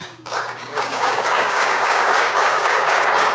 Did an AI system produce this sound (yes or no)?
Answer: yes